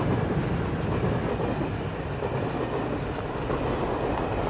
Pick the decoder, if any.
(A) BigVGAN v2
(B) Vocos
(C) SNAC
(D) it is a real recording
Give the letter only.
D